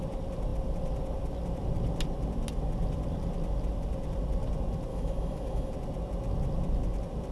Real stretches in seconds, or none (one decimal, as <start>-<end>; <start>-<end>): 0.0-4.9; 5.7-7.3